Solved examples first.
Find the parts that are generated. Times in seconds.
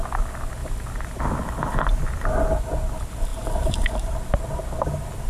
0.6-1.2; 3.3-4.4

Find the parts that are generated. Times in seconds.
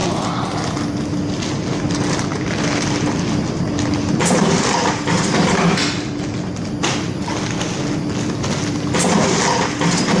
none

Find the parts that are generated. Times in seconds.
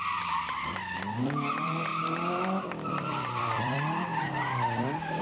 0.0-5.2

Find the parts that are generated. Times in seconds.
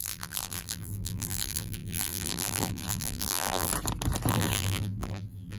0.0-3.7; 4.3-5.6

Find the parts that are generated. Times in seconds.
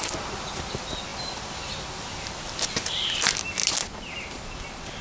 none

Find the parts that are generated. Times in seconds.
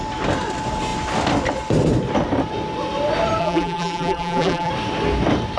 3.4-4.7